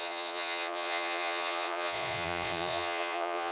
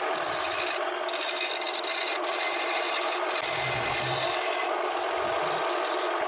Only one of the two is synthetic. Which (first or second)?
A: first